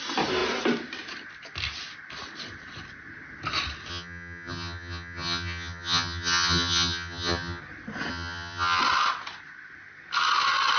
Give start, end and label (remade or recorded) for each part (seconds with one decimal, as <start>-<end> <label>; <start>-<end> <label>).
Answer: 0.0-3.9 recorded; 3.9-7.6 remade; 7.6-8.1 recorded; 8.1-8.8 remade; 8.8-10.8 recorded